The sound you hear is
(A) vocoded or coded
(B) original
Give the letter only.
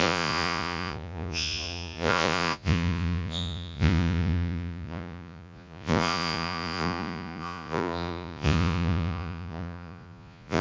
A